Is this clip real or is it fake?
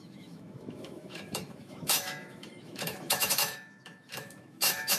fake